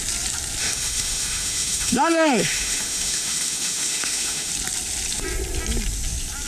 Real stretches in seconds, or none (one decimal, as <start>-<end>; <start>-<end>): 0.0-0.6; 4.5-6.5